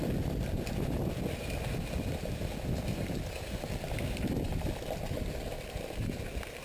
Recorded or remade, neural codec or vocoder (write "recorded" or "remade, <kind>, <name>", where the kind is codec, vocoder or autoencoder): remade, vocoder, BigVGAN v2